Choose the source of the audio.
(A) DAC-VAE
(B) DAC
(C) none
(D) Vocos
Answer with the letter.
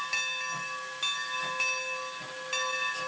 C